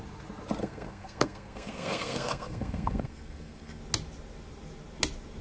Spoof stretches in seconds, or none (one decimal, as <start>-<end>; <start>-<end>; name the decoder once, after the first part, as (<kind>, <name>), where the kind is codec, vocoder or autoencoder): 0.6-3.8 (codec, SNAC)